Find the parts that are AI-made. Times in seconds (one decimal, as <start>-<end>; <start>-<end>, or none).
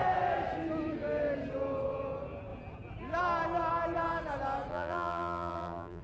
4.7-6.0